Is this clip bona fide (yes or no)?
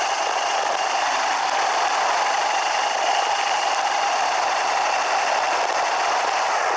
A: yes